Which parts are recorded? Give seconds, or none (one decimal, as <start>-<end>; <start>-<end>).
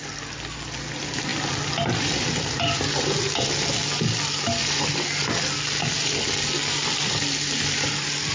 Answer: 0.0-8.3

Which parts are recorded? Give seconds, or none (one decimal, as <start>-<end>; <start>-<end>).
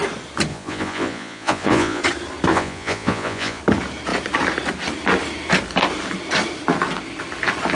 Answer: 0.0-0.5; 2.0-2.5; 3.6-7.7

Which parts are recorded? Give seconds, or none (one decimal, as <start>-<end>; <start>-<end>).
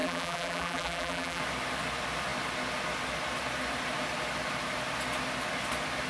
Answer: 1.4-6.1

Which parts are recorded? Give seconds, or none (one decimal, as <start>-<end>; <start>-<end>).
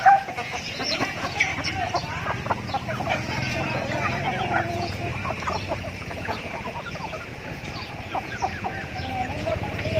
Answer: 1.5-3.1; 5.1-5.8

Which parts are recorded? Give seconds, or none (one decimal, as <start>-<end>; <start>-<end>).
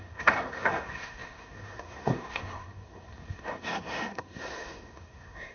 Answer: none